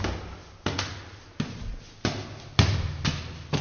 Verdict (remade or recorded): recorded